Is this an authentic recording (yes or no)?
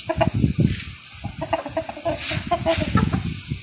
yes